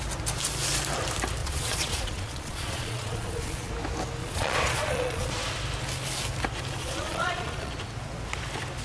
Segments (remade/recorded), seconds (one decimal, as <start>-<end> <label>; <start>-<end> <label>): 0.0-1.4 recorded; 1.4-3.7 remade; 3.7-4.2 recorded; 4.2-5.3 remade; 5.3-6.8 recorded; 6.8-7.7 remade; 7.7-8.8 recorded